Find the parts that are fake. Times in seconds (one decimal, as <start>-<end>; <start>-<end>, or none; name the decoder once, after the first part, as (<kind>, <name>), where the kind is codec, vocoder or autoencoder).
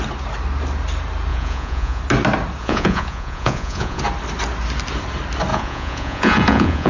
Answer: 1.3-2.0 (vocoder, Vocos); 2.6-4.0; 5.5-6.9